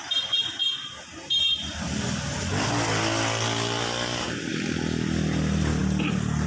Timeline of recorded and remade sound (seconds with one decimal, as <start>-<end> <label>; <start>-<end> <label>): 0.0-6.5 recorded